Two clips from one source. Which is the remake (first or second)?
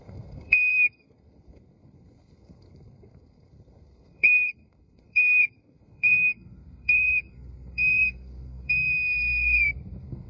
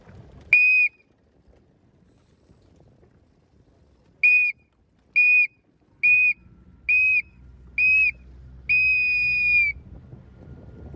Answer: first